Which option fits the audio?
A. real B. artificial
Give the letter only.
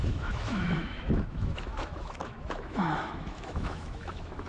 B